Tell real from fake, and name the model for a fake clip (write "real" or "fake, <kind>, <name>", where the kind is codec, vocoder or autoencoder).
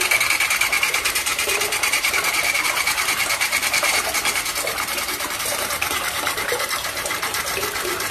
fake, vocoder, BigVGAN v2